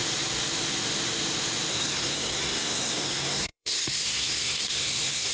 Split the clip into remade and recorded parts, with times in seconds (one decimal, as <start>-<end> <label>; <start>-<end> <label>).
0.0-1.7 recorded; 1.7-5.3 remade